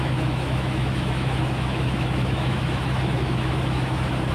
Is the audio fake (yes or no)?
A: yes